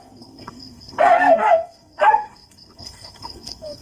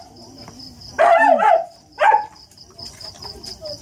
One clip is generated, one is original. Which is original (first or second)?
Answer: second